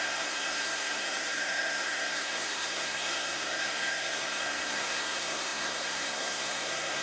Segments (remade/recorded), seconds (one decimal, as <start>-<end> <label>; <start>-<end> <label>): 0.0-7.0 remade